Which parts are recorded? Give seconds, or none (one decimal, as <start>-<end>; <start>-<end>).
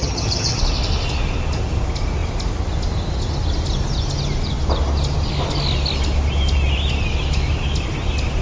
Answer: 0.6-8.4